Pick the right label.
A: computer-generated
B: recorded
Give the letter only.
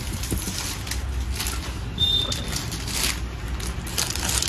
B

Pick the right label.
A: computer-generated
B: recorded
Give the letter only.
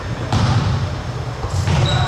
A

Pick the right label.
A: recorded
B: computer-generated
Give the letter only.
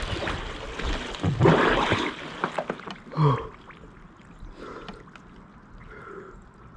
A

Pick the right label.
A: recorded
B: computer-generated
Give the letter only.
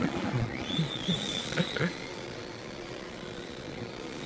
B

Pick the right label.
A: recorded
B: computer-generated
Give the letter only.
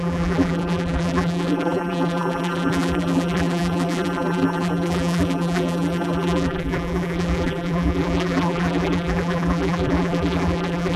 B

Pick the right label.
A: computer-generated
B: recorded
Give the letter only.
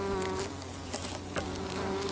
B